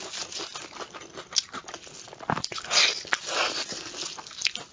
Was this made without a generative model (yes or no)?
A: yes